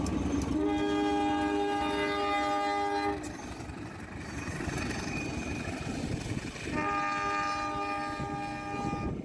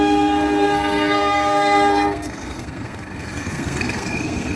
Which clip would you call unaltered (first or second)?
first